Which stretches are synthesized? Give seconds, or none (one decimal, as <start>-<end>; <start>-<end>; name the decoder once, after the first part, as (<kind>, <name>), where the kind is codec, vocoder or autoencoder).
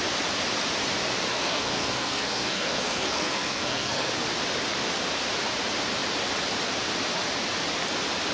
1.3-4.1 (codec, SNAC)